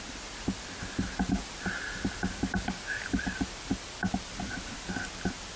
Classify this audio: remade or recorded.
recorded